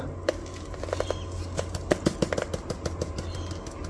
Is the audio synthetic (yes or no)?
no